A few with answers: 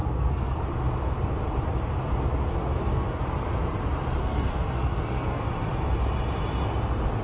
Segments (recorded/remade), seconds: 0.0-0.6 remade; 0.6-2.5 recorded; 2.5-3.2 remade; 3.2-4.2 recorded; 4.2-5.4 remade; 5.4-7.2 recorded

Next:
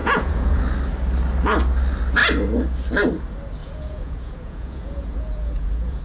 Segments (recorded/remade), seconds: 0.0-0.6 remade; 0.6-3.6 recorded; 3.6-6.0 remade

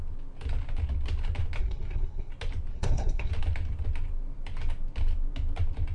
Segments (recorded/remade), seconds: 0.0-1.6 recorded; 1.6-2.3 remade; 2.3-2.7 recorded; 2.7-3.3 remade; 3.3-5.9 recorded

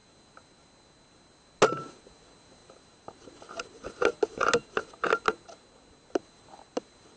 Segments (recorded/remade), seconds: 0.0-7.2 recorded

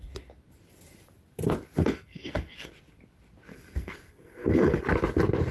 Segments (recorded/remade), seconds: 0.0-1.8 recorded; 1.8-2.7 remade; 2.7-3.5 recorded; 3.5-4.8 remade; 4.8-5.5 recorded

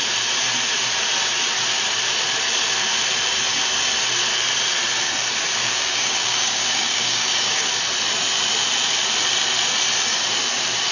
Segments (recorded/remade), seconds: 0.0-5.6 recorded; 5.6-7.7 remade; 7.7-10.9 recorded